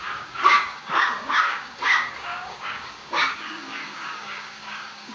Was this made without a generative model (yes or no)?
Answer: no